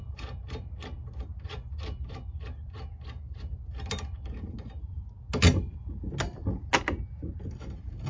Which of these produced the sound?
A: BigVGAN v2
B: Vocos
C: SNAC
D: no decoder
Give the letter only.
D